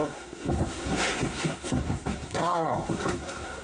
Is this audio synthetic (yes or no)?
yes